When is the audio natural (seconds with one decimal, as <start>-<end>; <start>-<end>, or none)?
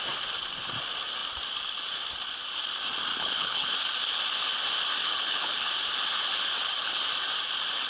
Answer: 0.0-3.1; 3.7-5.0; 5.7-7.9